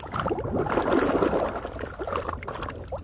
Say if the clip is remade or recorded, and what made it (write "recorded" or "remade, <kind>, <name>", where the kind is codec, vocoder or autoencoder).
recorded